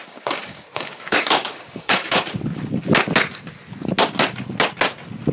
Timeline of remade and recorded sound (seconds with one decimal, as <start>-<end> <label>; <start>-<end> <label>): 0.0-2.2 remade; 2.2-5.3 recorded